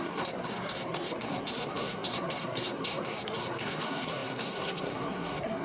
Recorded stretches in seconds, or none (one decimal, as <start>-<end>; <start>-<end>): none